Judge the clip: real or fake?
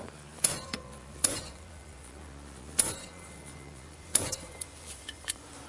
fake